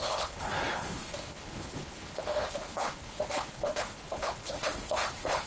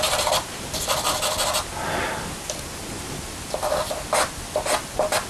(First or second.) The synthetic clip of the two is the first